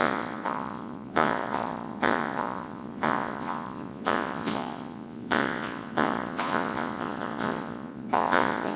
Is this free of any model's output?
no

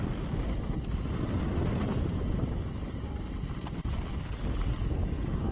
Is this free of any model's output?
yes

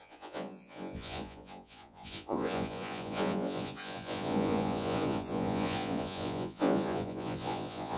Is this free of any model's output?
no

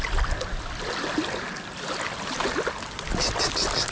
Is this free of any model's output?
yes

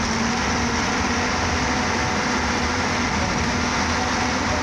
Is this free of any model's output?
yes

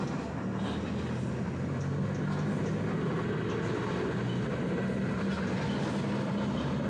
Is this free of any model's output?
yes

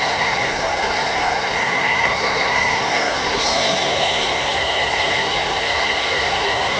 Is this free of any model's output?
no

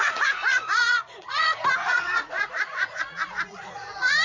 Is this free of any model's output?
no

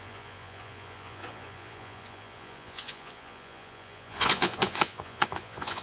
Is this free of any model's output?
no